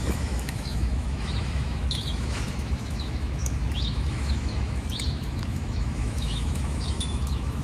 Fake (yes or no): yes